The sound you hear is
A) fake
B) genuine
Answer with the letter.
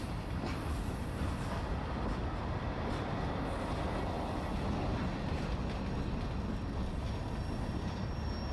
B